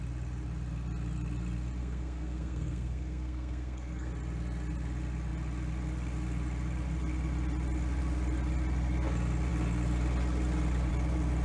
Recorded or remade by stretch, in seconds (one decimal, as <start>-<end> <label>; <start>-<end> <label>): 0.0-1.8 recorded; 1.8-4.1 remade; 4.1-11.4 recorded